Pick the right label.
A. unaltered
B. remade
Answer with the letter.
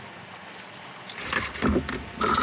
A